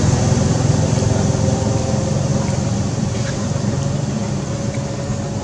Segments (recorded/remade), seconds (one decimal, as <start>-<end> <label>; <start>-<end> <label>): 0.0-5.4 remade